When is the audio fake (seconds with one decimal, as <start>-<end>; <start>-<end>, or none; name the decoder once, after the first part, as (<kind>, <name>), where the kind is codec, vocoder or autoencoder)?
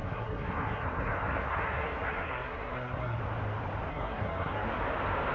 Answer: 0.0-3.2 (codec, SNAC); 3.9-4.8